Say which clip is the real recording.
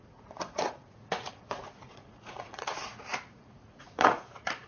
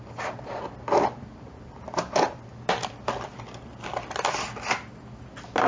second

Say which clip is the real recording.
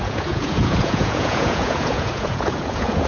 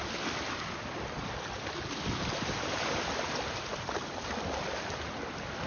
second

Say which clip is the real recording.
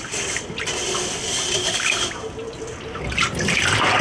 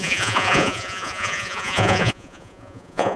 first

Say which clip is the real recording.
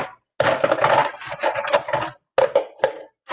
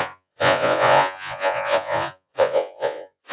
first